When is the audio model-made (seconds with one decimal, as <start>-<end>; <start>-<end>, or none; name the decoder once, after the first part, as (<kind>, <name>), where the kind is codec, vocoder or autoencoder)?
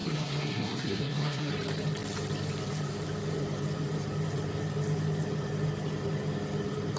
0.0-1.5 (codec, SNAC)